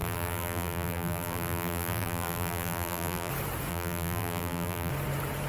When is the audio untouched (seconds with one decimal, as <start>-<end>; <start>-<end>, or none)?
3.3-3.7; 4.9-5.5